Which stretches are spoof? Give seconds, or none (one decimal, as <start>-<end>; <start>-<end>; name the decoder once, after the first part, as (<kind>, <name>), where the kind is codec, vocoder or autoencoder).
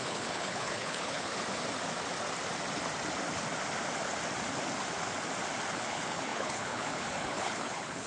0.0-1.3 (codec, HILCodec); 5.7-8.1